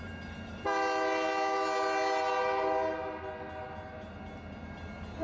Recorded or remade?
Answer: recorded